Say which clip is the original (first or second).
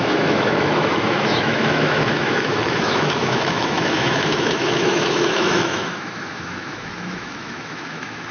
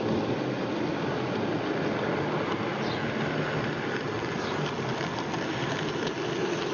second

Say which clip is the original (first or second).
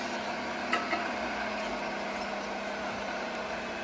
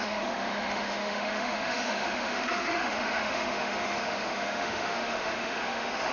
first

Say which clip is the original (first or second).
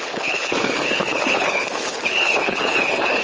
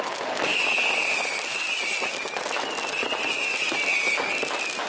second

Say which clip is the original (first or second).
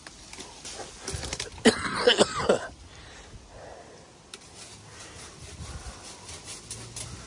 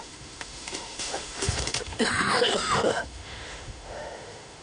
first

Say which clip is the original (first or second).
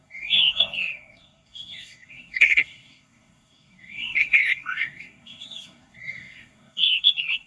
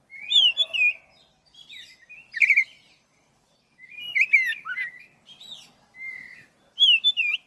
second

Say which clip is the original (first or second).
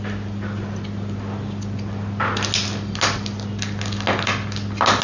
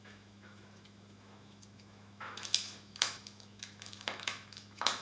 first